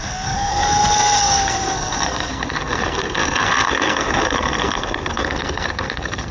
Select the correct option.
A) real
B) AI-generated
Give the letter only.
B